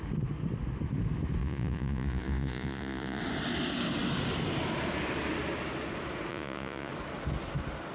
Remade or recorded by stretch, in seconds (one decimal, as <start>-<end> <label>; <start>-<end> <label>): 0.0-1.4 recorded; 1.4-3.2 remade; 3.2-6.3 recorded; 6.3-6.9 remade; 6.9-7.9 recorded